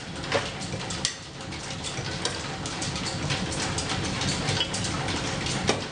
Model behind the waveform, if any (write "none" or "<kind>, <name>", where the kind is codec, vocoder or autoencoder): none